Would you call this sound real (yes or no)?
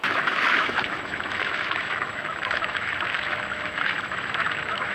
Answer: no